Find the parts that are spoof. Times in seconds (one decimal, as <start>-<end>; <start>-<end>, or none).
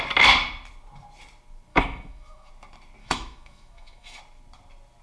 1.7-2.5; 3.0-4.2